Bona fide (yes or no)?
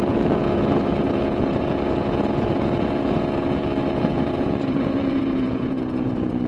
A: no